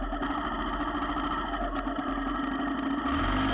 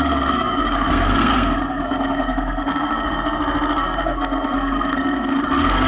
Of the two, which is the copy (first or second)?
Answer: second